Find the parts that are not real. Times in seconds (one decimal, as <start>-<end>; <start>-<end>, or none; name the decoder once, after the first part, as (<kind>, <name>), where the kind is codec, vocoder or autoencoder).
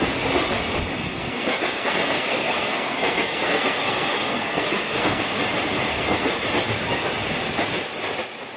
1.1-5.3 (codec, SNAC); 5.9-6.4